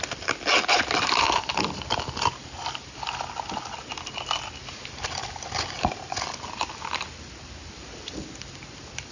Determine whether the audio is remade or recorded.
recorded